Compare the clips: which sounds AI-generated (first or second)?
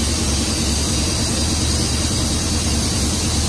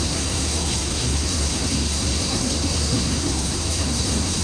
second